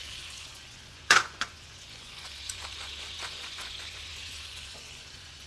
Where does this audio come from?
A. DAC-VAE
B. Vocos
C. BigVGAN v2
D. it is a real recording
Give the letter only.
B